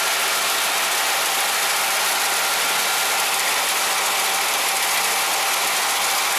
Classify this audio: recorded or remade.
recorded